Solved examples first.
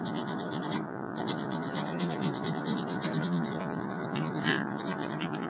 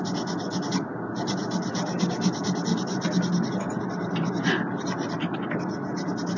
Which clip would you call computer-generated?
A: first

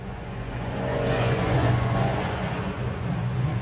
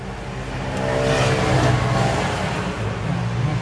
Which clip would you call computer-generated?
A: first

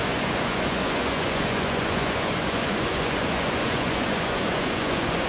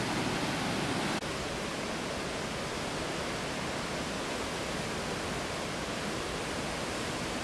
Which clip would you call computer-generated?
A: first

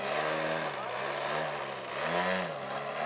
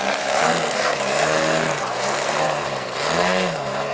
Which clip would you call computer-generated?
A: second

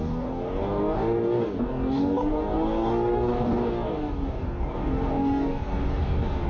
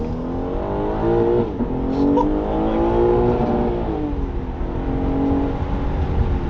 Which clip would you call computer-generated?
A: first